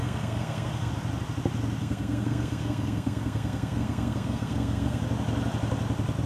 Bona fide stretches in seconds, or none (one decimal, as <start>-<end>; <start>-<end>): 0.9-1.8; 5.0-6.3

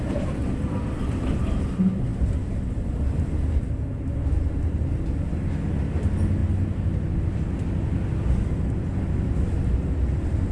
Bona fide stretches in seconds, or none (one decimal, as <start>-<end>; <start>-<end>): 0.0-10.5

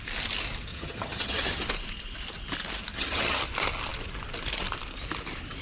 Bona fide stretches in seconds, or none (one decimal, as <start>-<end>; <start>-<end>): 0.0-0.7; 1.6-2.9; 3.4-5.6

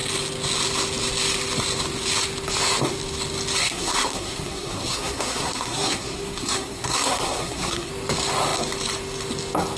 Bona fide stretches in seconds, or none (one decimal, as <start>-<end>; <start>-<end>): 0.0-3.6; 7.9-9.8